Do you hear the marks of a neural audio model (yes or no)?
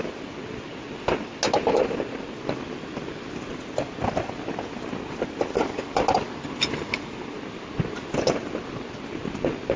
no